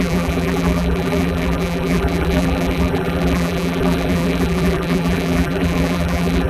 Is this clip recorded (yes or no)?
no